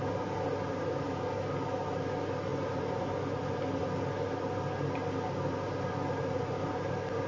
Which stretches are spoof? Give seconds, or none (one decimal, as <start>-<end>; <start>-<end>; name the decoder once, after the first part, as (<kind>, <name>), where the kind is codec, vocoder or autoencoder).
none